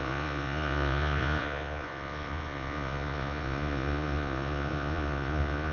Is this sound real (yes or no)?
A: no